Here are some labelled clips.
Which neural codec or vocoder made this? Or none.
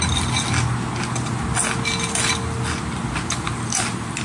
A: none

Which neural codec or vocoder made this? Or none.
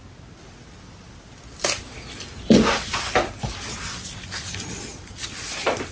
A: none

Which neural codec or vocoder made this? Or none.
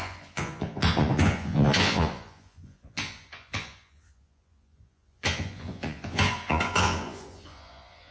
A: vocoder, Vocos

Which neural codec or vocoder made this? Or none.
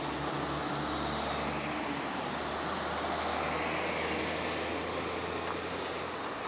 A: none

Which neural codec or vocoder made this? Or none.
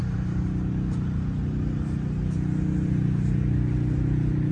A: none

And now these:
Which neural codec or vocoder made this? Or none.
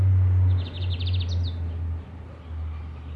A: none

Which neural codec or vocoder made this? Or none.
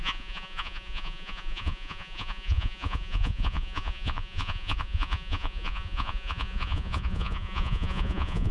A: vocoder, Vocos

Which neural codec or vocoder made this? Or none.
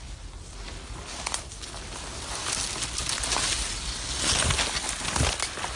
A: none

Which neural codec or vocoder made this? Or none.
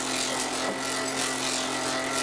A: none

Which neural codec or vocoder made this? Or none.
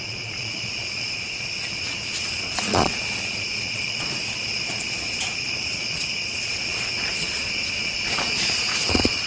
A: vocoder, Vocos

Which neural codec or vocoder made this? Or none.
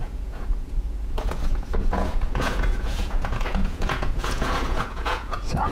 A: vocoder, Vocos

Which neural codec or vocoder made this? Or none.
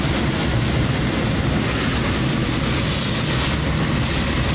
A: none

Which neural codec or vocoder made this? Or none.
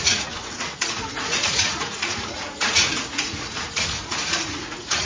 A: vocoder, Vocos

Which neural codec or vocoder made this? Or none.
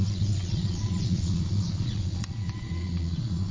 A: vocoder, Vocos